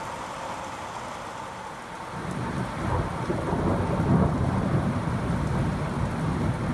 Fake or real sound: real